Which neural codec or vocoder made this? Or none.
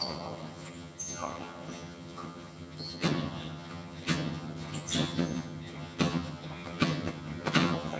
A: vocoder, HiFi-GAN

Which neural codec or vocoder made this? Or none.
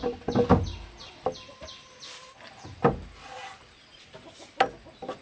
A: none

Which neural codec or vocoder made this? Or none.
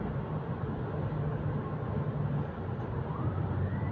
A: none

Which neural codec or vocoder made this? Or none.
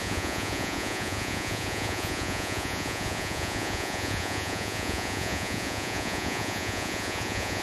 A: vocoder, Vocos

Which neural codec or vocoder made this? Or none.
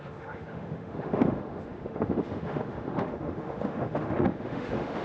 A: autoencoder, DAC-VAE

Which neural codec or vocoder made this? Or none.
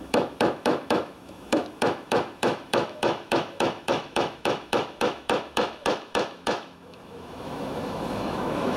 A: autoencoder, DAC-VAE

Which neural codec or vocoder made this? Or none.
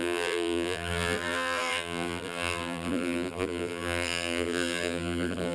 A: vocoder, BigVGAN v2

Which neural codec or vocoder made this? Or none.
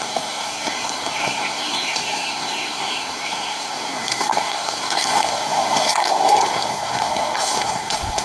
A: codec, SNAC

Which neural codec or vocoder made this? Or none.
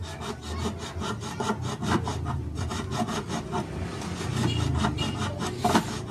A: none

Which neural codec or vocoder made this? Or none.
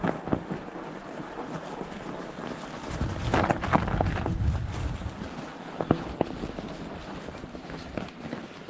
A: none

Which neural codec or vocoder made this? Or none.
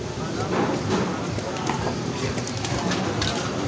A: none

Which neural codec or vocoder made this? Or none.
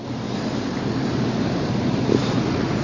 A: vocoder, BigVGAN v2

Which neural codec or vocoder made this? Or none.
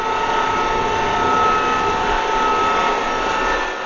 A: none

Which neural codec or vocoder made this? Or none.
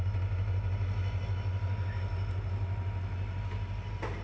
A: none